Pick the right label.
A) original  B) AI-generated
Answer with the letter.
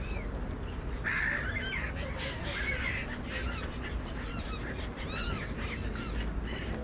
A